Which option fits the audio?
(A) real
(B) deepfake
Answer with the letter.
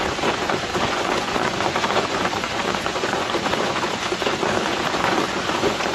B